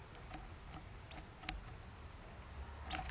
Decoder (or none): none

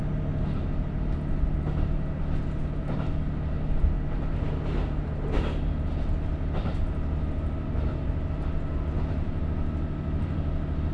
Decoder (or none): none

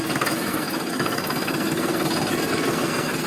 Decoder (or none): codec, SNAC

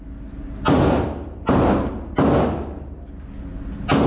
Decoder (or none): none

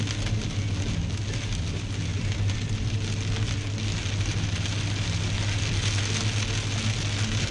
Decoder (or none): none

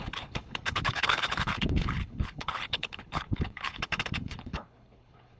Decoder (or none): codec, HILCodec